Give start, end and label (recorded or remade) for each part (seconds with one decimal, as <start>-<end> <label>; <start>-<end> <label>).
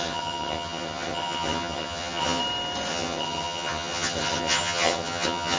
0.0-2.4 remade; 2.4-2.9 recorded; 2.9-5.6 remade